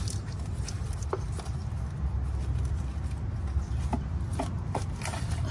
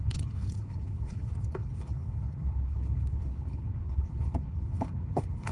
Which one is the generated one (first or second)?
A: second